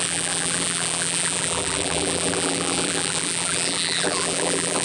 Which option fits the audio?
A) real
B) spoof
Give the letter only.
B